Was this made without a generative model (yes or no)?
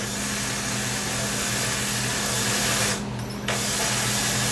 yes